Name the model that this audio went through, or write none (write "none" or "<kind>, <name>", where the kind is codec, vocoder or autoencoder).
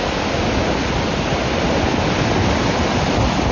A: none